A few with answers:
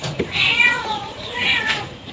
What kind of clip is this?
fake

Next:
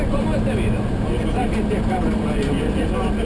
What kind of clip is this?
real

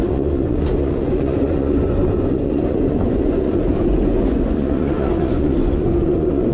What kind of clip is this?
fake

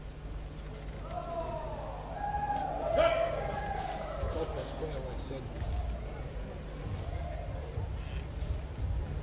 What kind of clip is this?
real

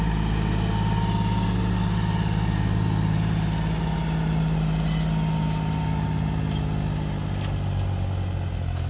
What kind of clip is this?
real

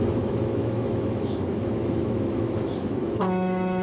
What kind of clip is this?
fake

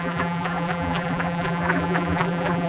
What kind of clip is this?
fake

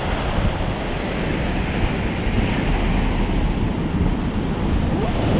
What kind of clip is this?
real